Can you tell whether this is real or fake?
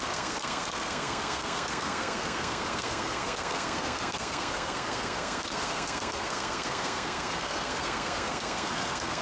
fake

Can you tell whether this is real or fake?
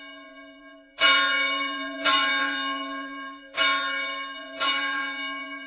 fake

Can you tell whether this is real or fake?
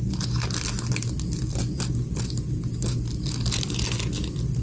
real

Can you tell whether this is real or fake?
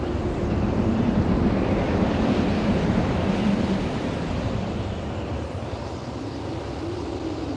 real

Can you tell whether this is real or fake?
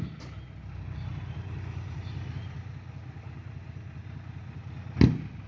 real